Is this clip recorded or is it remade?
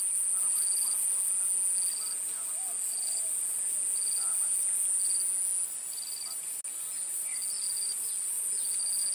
recorded